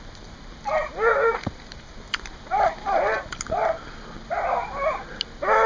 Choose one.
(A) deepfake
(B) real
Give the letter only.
B